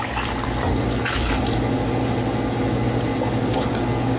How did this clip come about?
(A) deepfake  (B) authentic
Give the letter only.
B